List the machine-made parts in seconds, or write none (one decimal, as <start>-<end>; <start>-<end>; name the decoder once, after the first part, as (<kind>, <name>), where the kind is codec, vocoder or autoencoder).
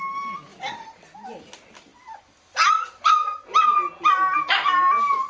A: 0.5-1.5 (vocoder, BigVGAN v2); 1.9-2.7